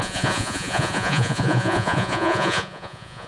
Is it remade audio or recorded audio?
remade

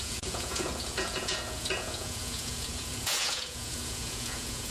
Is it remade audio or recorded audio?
remade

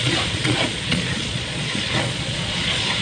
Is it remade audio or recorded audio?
remade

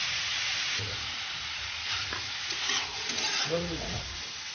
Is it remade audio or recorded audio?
remade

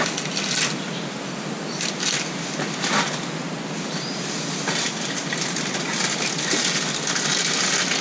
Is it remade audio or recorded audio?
recorded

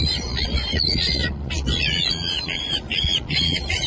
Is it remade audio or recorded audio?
remade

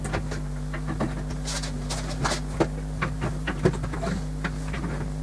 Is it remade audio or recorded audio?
recorded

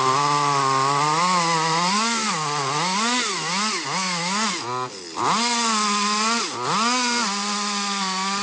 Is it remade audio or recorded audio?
recorded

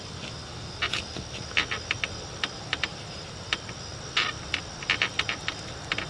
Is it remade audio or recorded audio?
recorded